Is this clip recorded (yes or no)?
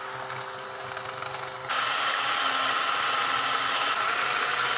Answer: yes